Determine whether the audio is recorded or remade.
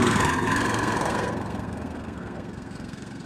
remade